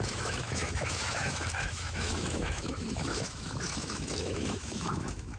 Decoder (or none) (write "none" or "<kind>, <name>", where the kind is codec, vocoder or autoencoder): autoencoder, DAC-VAE